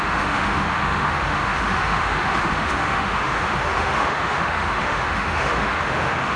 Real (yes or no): no